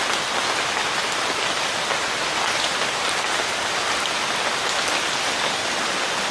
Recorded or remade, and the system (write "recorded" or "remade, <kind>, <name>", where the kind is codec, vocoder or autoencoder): recorded